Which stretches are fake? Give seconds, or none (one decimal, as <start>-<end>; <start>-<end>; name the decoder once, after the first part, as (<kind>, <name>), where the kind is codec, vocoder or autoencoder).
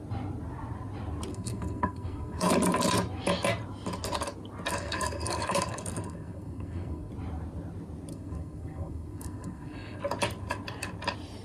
1.3-2.5 (codec, SNAC); 4.7-7.1; 8.1-10.0